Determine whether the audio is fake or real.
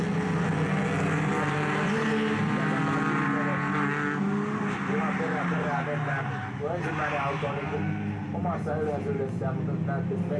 real